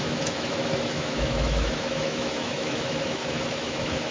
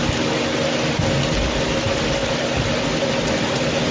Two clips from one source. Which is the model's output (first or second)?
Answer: first